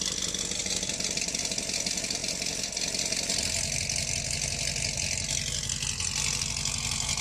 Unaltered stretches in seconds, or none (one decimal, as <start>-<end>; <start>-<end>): 0.0-0.6; 1.4-7.2